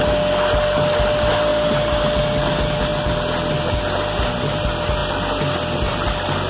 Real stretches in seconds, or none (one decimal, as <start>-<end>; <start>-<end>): 0.0-6.5